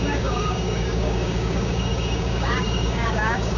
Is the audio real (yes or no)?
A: no